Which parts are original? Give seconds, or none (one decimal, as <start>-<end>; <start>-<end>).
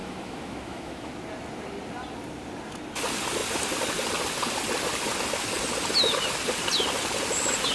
1.1-7.7